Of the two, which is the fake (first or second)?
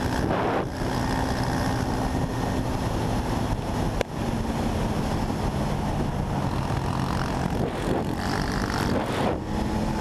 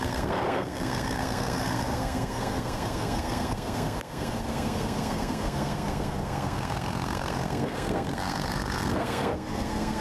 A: second